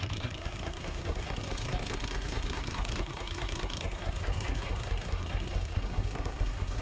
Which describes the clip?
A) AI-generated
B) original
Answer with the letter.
A